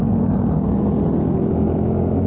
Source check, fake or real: real